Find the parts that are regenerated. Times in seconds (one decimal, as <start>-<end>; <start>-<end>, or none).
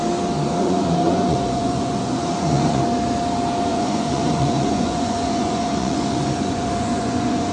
0.6-2.8; 3.7-7.5